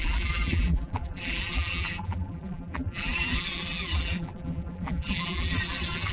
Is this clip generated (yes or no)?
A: yes